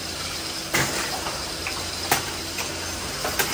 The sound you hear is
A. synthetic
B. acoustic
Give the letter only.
B